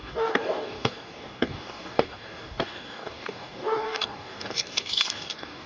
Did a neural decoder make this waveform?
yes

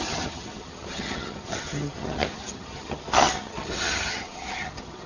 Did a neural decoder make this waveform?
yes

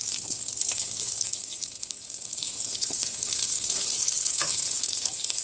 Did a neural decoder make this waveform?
yes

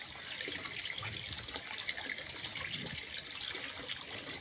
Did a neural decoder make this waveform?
yes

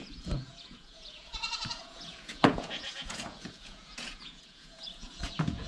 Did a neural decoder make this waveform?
yes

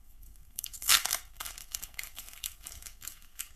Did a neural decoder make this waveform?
yes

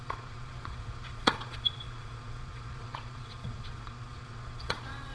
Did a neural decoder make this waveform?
yes